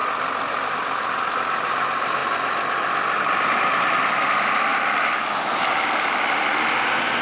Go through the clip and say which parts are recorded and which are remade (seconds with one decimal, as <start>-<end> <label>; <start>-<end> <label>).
0.0-7.2 recorded